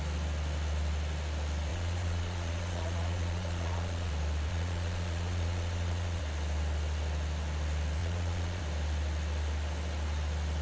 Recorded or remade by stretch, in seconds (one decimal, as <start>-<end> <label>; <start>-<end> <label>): 0.0-1.7 recorded; 1.7-4.1 remade; 4.1-4.5 recorded; 4.5-6.2 remade; 6.2-8.0 recorded; 8.0-8.6 remade; 8.6-10.6 recorded